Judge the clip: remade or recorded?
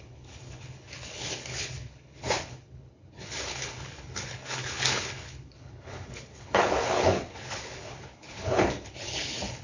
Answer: remade